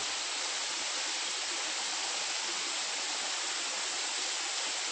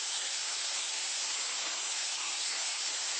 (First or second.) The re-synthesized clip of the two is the second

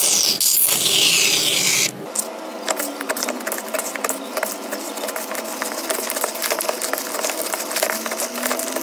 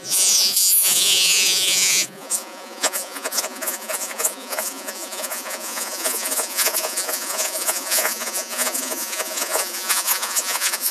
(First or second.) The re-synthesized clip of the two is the second